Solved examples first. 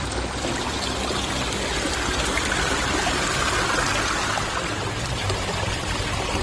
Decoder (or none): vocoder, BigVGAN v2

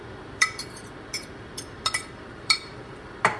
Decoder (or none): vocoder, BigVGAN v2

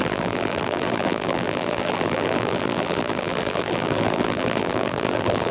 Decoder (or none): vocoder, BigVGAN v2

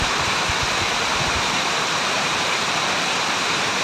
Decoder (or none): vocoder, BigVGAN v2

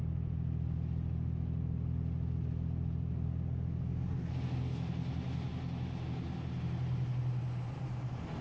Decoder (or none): none